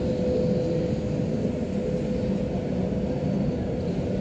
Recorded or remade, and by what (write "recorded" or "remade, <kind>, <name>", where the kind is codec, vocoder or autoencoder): recorded